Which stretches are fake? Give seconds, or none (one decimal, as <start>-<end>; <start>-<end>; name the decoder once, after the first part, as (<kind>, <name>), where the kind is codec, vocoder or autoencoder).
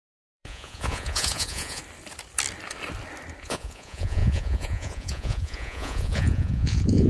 0.0-1.8 (vocoder, Vocos); 3.4-7.1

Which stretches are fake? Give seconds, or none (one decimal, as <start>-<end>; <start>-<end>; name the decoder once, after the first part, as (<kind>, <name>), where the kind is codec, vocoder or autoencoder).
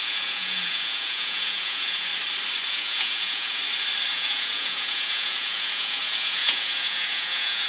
0.0-2.1 (vocoder, Vocos); 2.7-3.6; 4.1-7.7